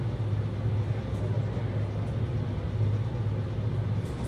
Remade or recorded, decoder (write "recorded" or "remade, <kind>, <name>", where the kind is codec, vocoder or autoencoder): recorded